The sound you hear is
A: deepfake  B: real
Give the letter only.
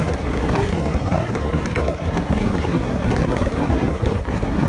A